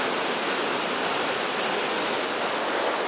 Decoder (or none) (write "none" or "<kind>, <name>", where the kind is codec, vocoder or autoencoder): none